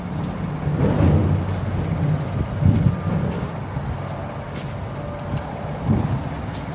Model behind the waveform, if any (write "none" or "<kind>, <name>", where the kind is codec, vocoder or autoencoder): none